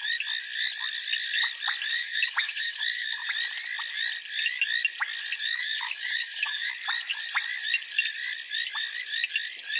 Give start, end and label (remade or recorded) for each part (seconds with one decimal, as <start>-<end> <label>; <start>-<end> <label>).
0.0-2.0 recorded; 2.0-3.3 remade; 3.3-5.5 recorded; 5.5-6.7 remade; 6.7-9.8 recorded